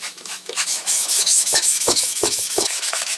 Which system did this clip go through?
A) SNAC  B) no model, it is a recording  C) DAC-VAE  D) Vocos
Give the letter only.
C